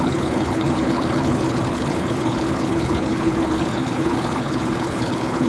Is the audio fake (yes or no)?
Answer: yes